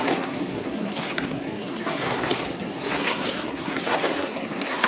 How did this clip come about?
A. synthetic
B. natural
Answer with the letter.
A